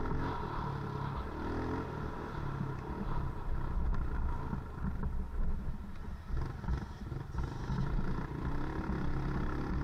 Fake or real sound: real